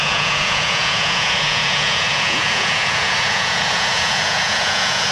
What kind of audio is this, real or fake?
fake